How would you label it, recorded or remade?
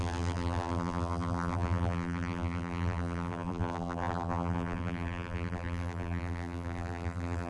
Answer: remade